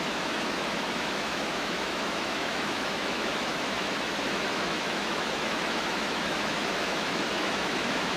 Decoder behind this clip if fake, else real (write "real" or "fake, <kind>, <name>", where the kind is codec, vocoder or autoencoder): fake, autoencoder, DAC-VAE